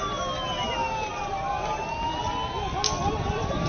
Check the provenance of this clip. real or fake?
real